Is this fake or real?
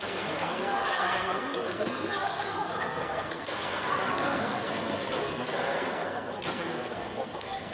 fake